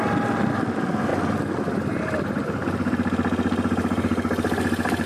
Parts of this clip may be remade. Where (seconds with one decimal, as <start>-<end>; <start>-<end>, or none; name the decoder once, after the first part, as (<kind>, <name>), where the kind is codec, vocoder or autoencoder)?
none